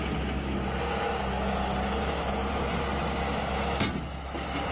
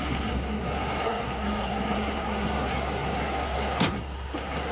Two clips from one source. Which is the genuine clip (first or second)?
first